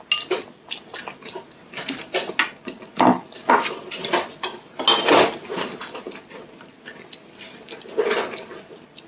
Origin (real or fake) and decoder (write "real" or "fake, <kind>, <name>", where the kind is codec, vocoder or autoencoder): real